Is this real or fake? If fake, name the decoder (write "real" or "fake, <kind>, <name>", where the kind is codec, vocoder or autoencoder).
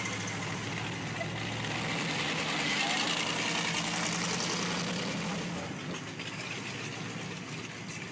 real